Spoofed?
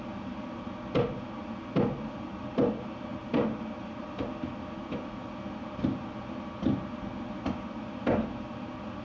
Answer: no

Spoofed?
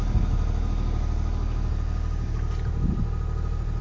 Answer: no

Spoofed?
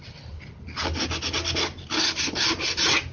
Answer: no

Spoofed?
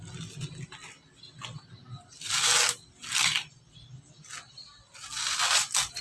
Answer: no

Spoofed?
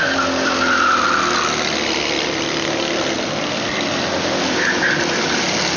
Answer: no